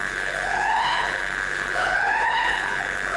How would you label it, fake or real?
fake